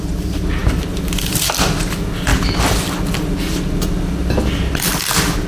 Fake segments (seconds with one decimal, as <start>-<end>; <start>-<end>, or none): none